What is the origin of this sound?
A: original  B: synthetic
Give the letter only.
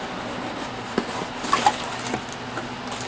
A